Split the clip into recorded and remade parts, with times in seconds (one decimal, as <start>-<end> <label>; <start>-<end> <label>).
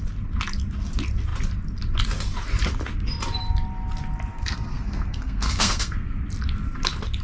0.0-4.3 recorded; 4.3-6.2 remade; 6.2-7.2 recorded